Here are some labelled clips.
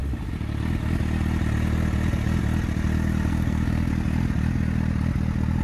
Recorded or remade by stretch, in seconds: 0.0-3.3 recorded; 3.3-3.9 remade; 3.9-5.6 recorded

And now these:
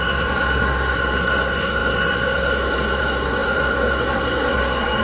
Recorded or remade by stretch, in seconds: 0.0-5.0 remade

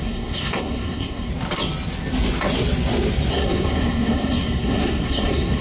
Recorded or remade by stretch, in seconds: 0.0-1.3 remade; 1.3-3.3 recorded; 3.3-5.6 remade